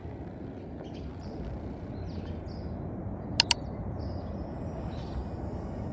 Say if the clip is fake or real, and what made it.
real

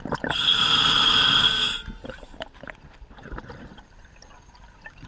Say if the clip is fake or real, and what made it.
real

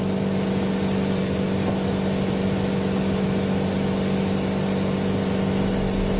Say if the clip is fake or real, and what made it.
real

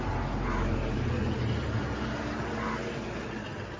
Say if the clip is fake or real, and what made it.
real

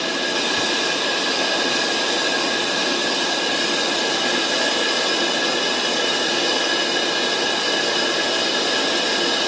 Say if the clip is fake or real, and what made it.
real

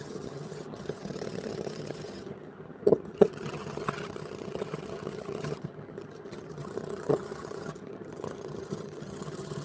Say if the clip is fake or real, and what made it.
fake, vocoder, HiFi-GAN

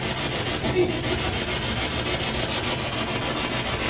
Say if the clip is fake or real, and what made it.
real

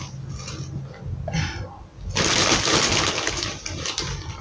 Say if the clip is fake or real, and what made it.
real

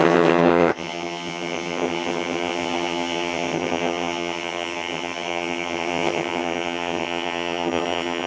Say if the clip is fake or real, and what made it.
fake, vocoder, HiFi-GAN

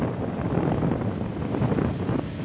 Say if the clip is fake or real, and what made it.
real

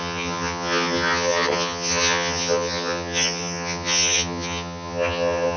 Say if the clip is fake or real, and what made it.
fake, vocoder, HiFi-GAN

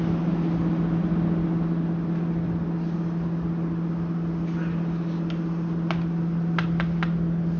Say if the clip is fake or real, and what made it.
real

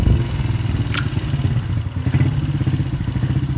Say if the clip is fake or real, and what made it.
real